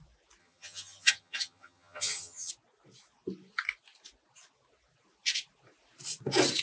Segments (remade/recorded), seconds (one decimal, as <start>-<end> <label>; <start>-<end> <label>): 0.0-0.4 recorded; 0.4-2.5 remade; 2.5-6.6 recorded